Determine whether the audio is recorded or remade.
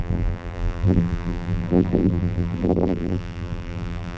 remade